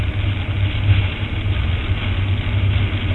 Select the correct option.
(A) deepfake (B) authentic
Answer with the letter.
B